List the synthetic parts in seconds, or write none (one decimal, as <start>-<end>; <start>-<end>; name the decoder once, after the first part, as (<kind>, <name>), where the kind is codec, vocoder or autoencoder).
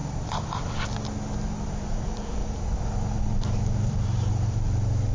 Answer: 1.7-2.4 (vocoder, BigVGAN v2); 3.1-5.1